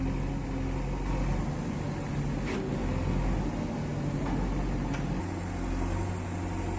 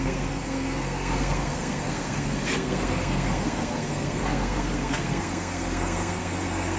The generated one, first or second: second